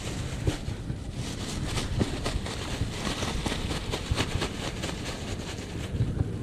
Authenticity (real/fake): real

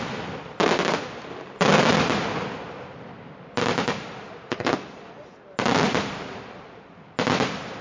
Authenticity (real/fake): real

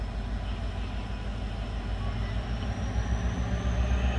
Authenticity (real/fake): real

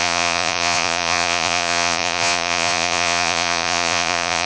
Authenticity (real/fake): fake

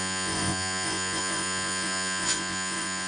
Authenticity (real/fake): fake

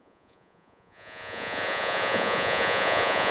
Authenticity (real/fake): fake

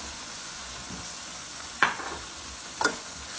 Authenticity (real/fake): fake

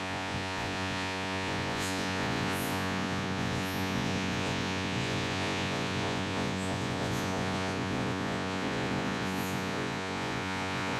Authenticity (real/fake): fake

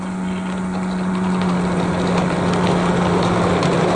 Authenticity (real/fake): real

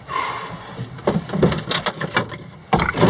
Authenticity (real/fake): real